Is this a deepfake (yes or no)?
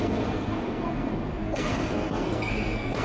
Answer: yes